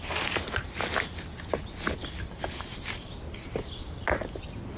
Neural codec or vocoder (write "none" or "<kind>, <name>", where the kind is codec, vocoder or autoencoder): none